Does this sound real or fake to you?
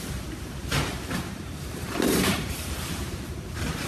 fake